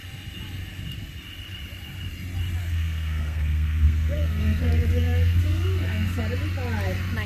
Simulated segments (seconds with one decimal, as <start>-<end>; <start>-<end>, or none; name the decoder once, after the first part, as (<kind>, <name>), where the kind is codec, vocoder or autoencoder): 2.6-6.2 (codec, SNAC)